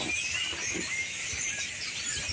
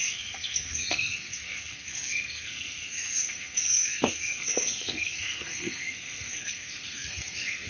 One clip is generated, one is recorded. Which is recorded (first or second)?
first